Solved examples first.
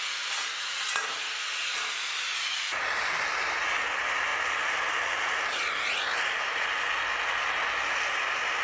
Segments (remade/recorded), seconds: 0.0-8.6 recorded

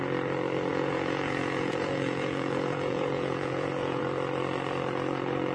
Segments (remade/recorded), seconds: 0.0-0.7 recorded; 0.7-4.0 remade; 4.0-5.5 recorded